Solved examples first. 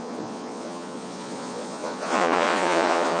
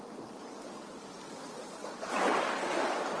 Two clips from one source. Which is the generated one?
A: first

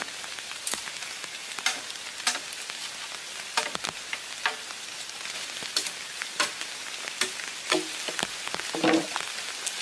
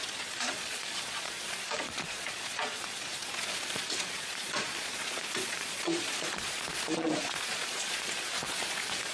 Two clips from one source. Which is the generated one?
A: second